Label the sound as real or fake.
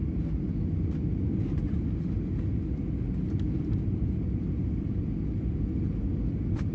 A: real